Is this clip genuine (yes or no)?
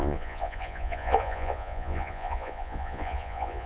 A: no